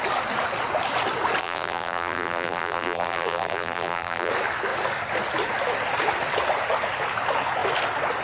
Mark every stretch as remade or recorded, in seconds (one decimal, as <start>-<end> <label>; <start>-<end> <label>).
0.0-1.4 recorded; 1.4-4.3 remade; 4.3-8.2 recorded